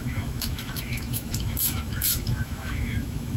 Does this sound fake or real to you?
fake